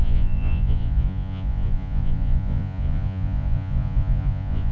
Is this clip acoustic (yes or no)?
no